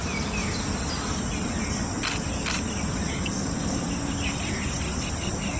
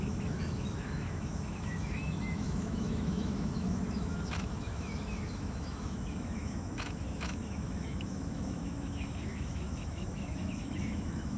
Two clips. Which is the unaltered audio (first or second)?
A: first